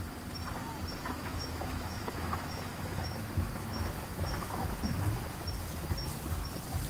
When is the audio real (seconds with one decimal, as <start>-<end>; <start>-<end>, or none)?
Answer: 0.0-1.0; 5.1-6.9